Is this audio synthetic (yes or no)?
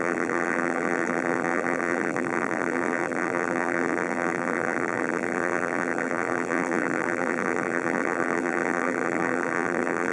yes